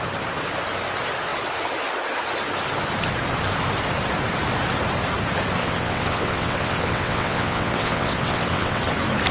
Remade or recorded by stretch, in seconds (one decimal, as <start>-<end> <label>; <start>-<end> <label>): 0.0-5.6 recorded; 5.6-8.8 remade; 8.8-9.3 recorded